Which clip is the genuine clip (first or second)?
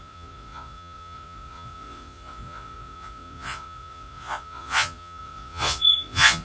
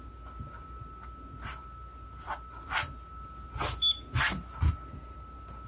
second